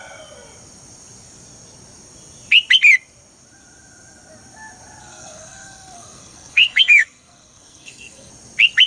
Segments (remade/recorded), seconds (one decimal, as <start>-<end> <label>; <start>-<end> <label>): 0.0-5.0 recorded; 5.0-8.3 remade; 8.3-8.9 recorded